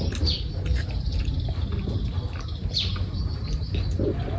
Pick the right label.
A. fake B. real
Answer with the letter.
B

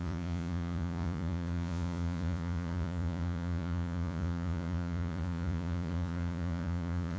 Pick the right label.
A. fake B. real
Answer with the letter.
A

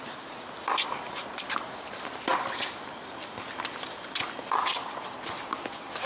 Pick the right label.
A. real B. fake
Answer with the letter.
A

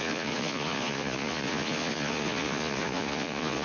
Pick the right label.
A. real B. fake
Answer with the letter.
B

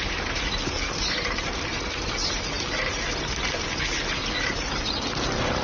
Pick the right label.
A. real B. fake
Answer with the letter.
A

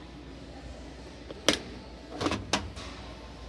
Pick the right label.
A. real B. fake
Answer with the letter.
A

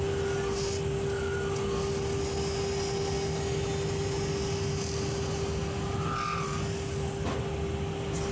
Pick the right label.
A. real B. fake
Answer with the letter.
A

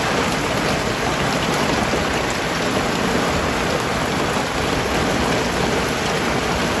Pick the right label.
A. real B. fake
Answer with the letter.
A